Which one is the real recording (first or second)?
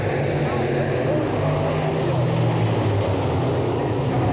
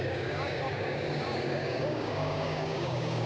first